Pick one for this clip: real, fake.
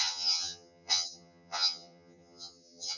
fake